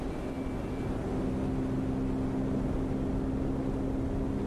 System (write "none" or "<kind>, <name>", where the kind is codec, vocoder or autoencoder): none